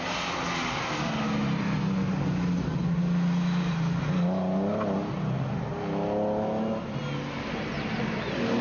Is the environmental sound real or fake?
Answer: real